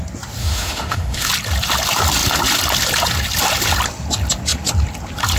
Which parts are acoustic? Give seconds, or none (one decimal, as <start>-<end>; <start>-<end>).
0.0-0.4; 1.3-5.4